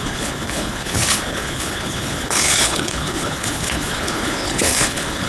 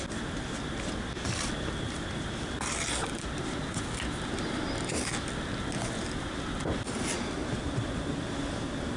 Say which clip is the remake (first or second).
first